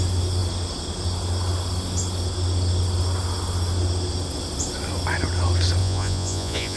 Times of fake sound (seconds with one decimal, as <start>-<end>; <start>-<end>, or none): 5.8-6.8